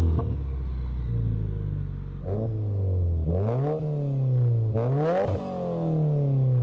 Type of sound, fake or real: real